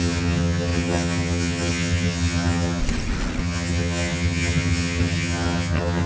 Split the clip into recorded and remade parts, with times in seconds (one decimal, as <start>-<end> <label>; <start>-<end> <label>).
0.0-2.8 remade; 2.8-3.4 recorded; 3.4-6.1 remade